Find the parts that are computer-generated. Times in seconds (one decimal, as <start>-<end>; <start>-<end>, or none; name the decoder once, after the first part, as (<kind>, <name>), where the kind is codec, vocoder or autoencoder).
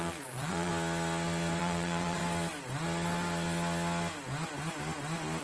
0.0-0.7 (vocoder, Vocos); 1.6-2.2